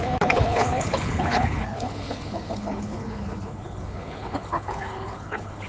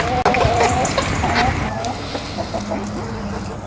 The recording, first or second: second